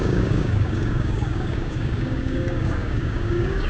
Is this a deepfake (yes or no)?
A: yes